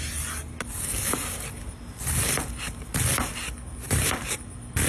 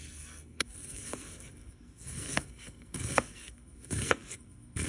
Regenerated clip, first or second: second